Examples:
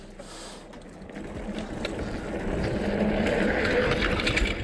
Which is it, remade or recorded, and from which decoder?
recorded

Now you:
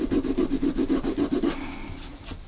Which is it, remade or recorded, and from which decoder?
recorded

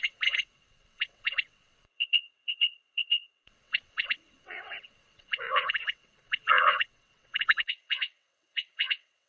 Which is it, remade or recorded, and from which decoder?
remade, vocoder, WaveNeXt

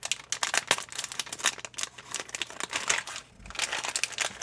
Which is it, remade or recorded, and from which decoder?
recorded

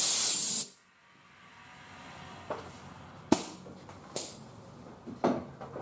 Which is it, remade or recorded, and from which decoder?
recorded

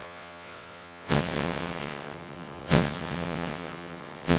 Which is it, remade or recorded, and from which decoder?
remade, vocoder, WaveNeXt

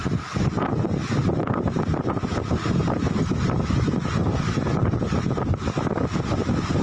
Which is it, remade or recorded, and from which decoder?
recorded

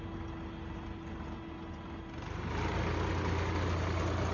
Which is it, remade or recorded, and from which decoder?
recorded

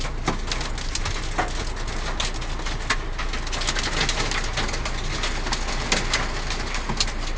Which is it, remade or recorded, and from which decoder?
recorded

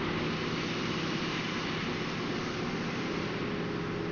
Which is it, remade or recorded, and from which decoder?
recorded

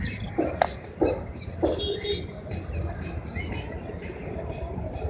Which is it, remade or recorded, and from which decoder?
recorded